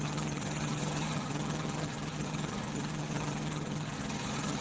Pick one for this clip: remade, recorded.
remade